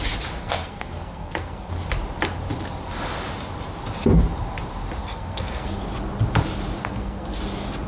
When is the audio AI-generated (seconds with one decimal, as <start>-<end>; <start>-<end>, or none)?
0.4-1.7; 5.0-5.8; 6.8-7.4